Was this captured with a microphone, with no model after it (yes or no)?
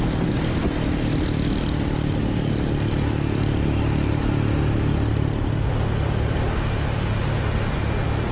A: yes